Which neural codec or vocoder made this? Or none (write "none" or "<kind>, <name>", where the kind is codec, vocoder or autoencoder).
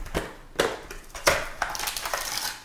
none